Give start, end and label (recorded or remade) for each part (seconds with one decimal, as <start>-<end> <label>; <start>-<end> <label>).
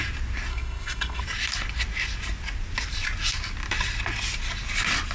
0.0-0.5 recorded; 0.5-1.2 remade; 1.2-5.1 recorded